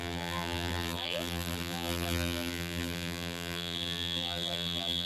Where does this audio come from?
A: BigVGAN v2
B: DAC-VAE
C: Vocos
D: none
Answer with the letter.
A